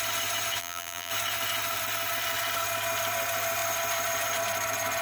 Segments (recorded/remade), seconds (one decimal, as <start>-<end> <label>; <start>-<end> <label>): 0.0-0.6 recorded; 0.6-1.1 remade; 1.1-5.0 recorded